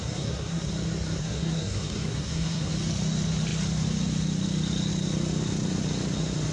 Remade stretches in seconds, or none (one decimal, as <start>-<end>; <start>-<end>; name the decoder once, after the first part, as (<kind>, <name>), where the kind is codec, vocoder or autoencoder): 0.0-0.7 (codec, SNAC); 1.2-2.7